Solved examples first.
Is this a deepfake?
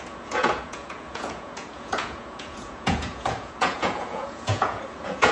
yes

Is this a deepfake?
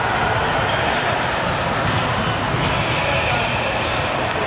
no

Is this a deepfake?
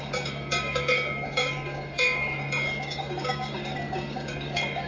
yes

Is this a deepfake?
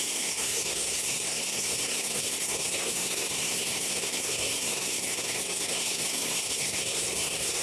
yes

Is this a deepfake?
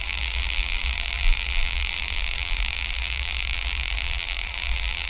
yes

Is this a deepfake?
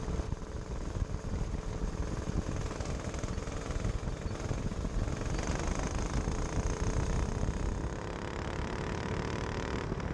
no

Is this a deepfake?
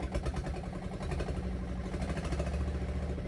no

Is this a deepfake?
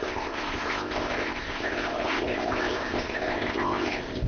yes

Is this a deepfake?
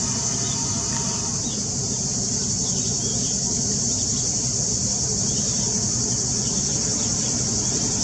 no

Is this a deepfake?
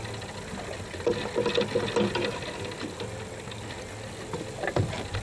no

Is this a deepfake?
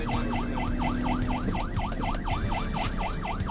no